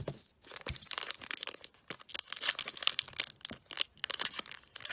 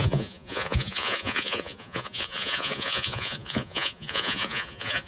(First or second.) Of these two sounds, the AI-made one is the second